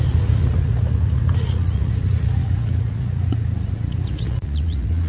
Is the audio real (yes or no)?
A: no